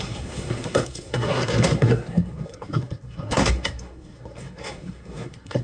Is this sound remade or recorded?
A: remade